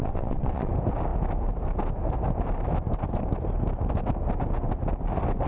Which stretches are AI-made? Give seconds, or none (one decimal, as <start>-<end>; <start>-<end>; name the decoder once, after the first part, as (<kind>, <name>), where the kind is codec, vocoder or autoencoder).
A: 0.0-0.7 (vocoder, WaveNeXt)